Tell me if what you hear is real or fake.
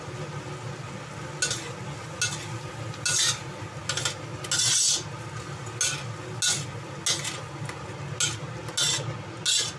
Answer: real